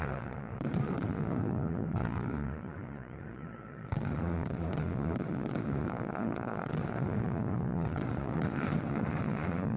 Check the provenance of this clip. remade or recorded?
remade